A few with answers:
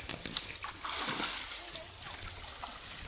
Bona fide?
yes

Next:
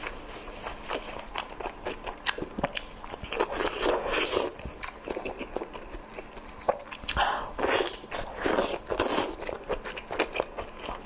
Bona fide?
yes